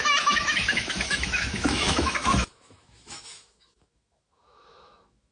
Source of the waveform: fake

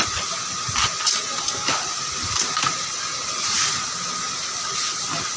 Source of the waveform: real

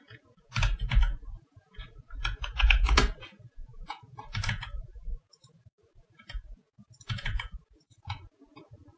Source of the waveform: fake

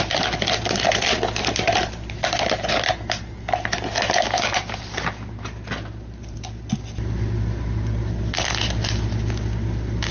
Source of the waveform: real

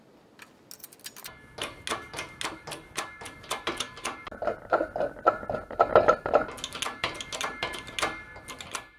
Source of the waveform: real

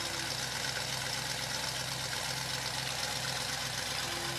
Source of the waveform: real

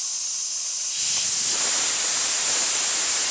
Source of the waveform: real